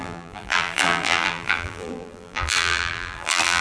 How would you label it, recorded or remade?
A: remade